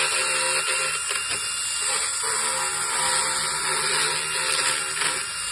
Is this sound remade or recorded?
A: recorded